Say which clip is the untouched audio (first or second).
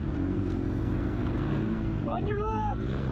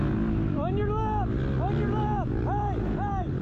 second